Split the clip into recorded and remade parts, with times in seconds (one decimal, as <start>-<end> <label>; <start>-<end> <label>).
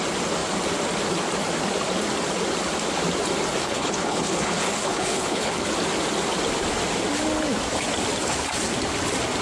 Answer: 0.0-3.6 recorded; 3.6-5.7 remade; 5.7-9.4 recorded